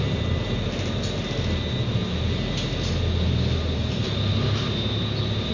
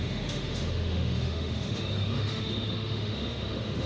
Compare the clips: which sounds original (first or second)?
first